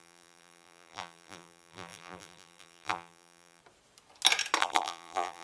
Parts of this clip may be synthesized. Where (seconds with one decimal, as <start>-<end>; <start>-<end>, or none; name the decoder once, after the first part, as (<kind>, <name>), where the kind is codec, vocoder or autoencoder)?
0.0-3.6 (vocoder, BigVGAN v2); 4.6-5.4